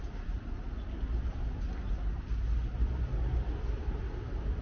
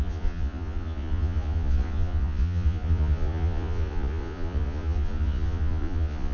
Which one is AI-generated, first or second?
second